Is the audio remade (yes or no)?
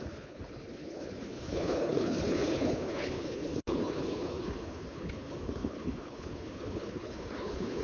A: yes